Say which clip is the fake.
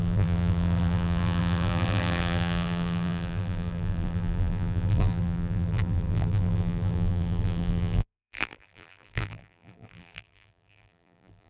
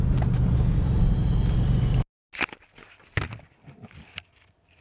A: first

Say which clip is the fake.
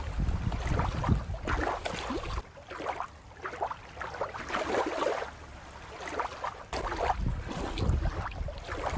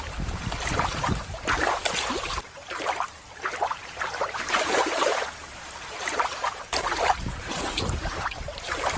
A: second